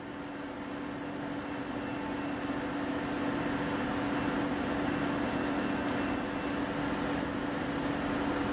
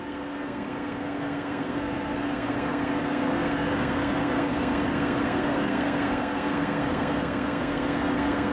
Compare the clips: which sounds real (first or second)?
first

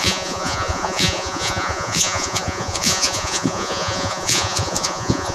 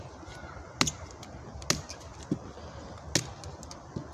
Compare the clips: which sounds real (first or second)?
second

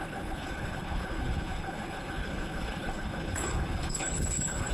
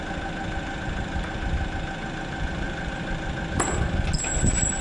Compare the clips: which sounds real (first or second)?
second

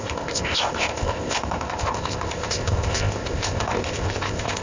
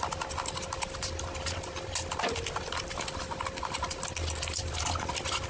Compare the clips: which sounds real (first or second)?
second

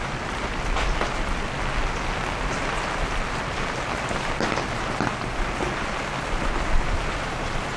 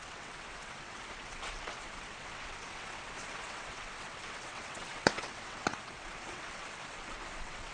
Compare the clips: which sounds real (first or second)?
first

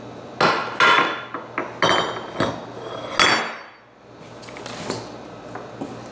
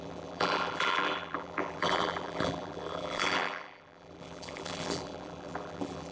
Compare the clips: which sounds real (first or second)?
first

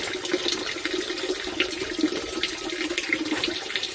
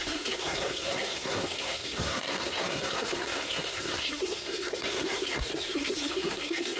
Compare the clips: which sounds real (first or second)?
first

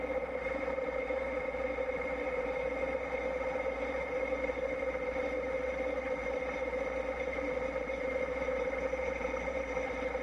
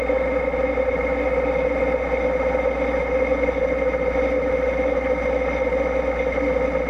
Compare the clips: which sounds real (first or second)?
second